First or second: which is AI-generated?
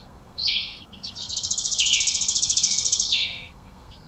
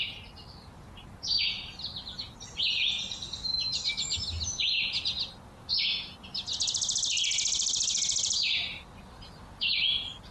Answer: first